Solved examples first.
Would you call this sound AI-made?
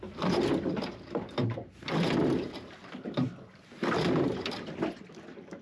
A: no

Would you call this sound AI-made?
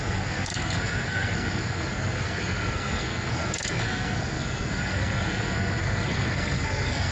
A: yes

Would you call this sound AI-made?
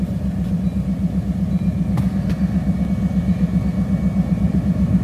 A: no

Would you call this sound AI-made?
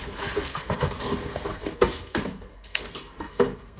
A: yes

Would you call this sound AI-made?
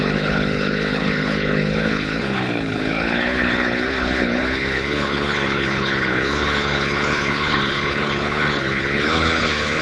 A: yes